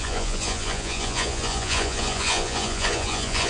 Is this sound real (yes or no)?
no